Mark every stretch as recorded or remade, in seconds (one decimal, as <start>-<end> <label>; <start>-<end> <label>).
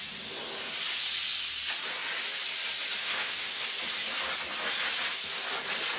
0.0-3.0 recorded; 3.0-3.6 remade; 3.6-6.0 recorded